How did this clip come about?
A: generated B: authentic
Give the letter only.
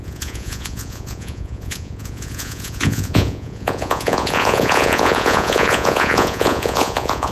A